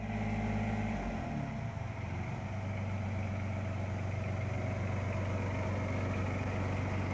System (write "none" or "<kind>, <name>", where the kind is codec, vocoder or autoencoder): none